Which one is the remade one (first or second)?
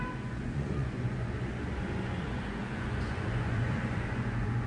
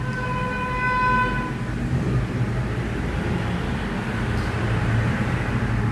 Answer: first